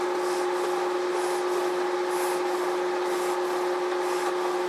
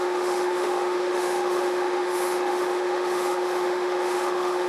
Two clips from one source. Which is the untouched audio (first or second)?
first